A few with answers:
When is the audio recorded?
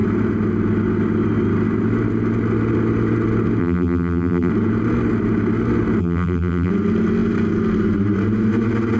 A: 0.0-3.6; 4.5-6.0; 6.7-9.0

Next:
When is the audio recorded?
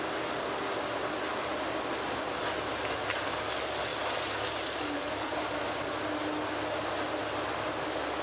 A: 0.0-8.2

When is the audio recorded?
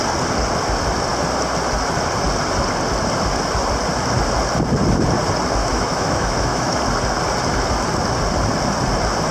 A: 0.0-5.6; 6.8-9.3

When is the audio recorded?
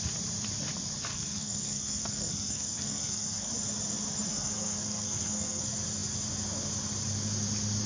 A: 0.0-1.1; 3.5-4.3; 5.6-7.9